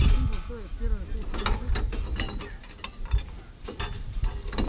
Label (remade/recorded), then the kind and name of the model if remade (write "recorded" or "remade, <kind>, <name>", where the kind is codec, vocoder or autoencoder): recorded